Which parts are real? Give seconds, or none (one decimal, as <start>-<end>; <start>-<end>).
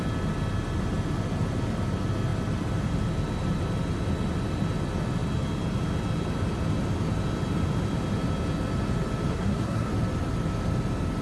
0.0-9.3; 9.9-11.2